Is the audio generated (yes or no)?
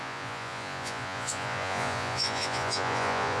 yes